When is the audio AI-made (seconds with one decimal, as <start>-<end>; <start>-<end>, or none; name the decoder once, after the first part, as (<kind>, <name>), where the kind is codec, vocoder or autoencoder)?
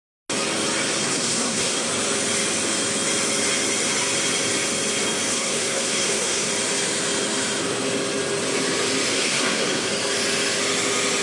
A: 1.0-1.9 (codec, SNAC); 5.3-6.5; 9.1-9.9